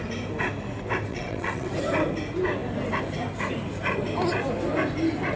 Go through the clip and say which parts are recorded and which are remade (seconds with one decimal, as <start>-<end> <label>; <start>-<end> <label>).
0.0-1.1 recorded; 1.1-1.7 remade; 1.7-5.4 recorded